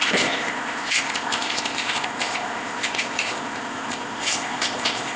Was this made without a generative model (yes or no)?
no